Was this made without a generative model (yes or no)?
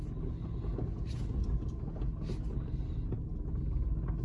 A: yes